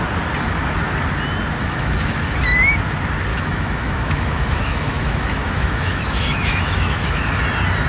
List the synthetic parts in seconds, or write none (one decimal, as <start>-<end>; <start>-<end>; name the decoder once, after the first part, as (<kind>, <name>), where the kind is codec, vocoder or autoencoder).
1.6-2.3 (autoencoder, DAC-VAE); 3.3-7.4